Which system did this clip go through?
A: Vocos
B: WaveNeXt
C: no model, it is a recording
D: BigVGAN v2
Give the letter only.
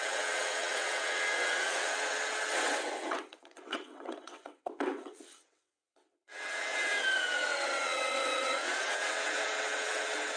B